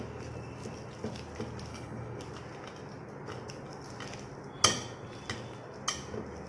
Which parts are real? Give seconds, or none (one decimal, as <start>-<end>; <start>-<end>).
0.0-1.7; 2.2-6.5

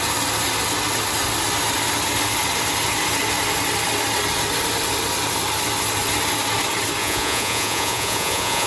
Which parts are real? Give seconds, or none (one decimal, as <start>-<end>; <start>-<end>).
0.0-7.0

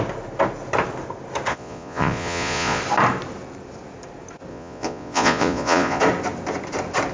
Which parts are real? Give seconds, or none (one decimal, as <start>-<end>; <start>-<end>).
0.0-1.5; 2.8-4.5; 6.0-7.1

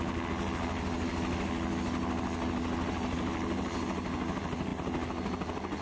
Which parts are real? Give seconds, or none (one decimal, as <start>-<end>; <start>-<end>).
0.0-5.8

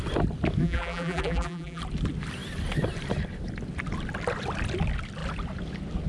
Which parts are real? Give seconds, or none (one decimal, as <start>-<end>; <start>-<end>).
0.0-0.6; 1.8-6.1

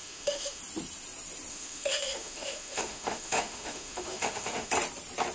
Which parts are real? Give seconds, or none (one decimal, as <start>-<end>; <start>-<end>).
0.6-1.5; 4.7-5.3